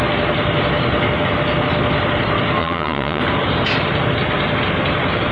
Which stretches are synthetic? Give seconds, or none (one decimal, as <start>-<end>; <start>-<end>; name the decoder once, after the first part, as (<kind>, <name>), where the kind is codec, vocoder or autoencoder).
2.6-3.2 (vocoder, Vocos)